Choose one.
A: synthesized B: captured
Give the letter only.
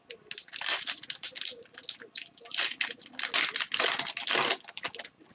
B